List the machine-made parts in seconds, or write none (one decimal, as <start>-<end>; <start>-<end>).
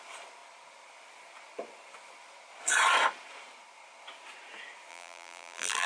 4.9-5.9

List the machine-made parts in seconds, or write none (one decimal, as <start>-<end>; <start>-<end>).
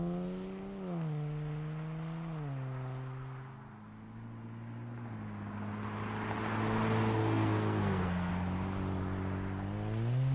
7.2-8.3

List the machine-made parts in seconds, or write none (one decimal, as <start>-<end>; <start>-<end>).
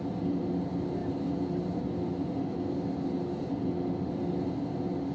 none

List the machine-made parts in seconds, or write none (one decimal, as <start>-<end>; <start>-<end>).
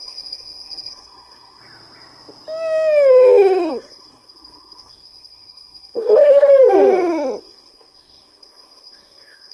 0.0-1.6; 3.7-6.5; 7.4-9.5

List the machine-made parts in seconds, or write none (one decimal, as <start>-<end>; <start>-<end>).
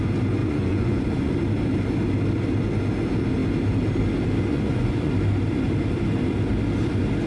0.4-1.3; 4.5-5.1